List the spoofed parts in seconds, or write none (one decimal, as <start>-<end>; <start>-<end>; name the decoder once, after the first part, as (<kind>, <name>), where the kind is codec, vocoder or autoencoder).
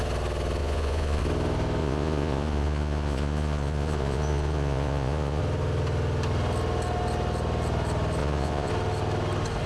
0.6-1.2 (vocoder, Vocos); 1.8-5.4; 8.2-8.7